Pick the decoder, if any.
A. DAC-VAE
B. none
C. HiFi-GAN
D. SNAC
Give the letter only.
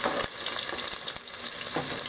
B